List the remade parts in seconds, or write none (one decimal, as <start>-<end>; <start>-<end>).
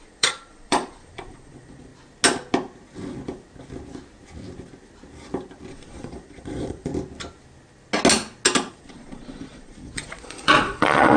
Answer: 0.0-1.9; 5.7-6.9; 8.7-11.2